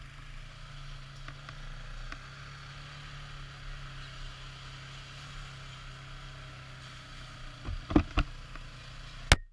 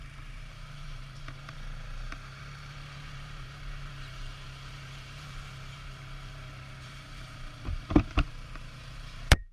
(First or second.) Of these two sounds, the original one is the first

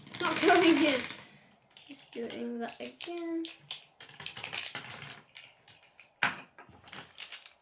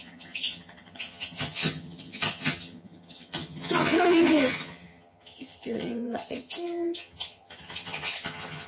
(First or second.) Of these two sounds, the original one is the first